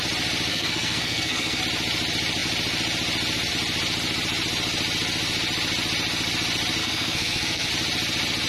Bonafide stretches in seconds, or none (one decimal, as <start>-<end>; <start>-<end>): 0.0-0.5; 1.6-6.8; 7.7-8.5